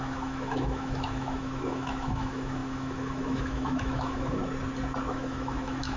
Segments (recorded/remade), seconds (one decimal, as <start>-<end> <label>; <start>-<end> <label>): 0.0-4.4 remade; 4.4-5.1 recorded; 5.1-6.0 remade